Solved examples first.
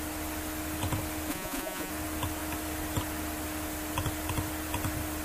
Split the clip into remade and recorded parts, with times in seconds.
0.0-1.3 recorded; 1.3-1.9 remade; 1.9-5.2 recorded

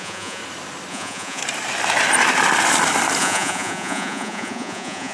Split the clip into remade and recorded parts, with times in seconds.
0.0-0.4 remade; 0.4-0.9 recorded; 0.9-1.4 remade; 1.4-3.2 recorded; 3.2-5.1 remade

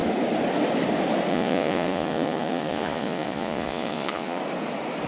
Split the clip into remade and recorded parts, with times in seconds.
0.0-1.3 recorded; 1.3-4.4 remade; 4.4-5.1 recorded

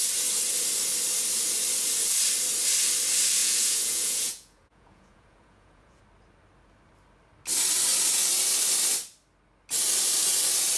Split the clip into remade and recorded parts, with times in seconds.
0.0-3.4 recorded; 3.4-6.0 remade; 6.0-10.8 recorded